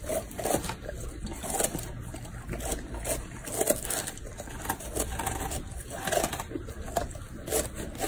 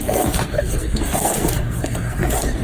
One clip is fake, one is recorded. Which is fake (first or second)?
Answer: second